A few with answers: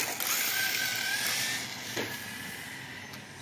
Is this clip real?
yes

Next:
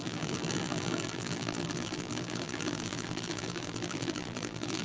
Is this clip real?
no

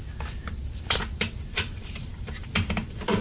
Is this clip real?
no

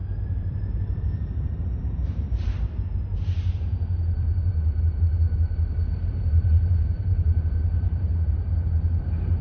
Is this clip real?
no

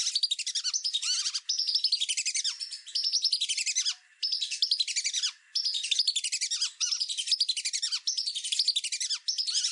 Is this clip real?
yes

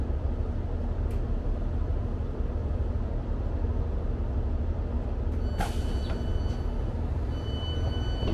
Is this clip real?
yes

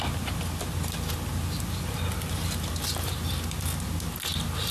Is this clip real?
yes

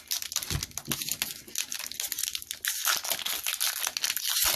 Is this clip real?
yes